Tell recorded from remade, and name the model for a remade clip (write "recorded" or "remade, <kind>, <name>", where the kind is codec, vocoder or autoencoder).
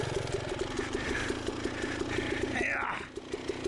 recorded